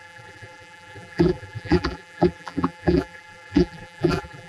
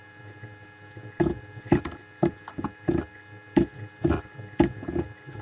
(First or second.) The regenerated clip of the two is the first